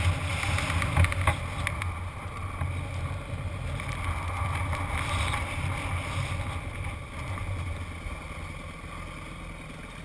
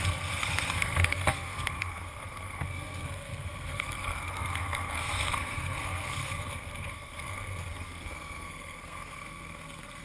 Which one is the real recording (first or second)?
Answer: first